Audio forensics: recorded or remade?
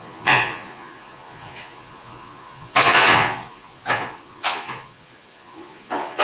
remade